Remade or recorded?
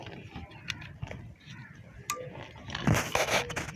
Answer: recorded